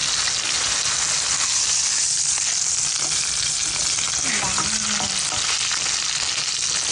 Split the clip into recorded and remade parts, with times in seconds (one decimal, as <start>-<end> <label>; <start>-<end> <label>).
0.0-6.9 recorded